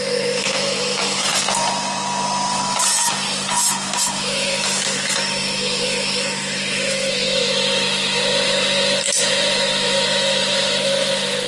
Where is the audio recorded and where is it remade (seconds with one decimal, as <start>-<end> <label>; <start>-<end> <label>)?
0.0-1.3 remade; 1.3-3.6 recorded; 3.6-11.5 remade